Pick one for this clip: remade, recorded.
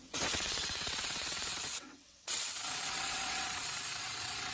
remade